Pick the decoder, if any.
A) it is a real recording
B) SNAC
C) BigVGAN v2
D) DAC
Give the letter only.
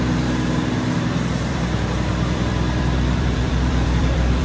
C